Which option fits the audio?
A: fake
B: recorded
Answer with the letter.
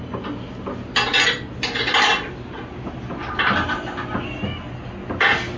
B